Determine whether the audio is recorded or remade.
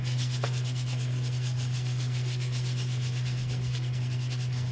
remade